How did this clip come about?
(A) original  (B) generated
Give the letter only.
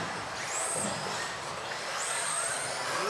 B